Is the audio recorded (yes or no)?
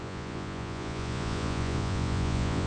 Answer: no